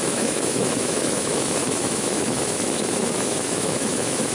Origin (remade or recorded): remade